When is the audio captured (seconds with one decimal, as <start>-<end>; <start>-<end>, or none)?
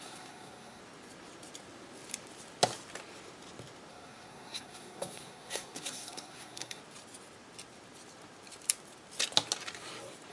0.8-3.9; 6.8-10.3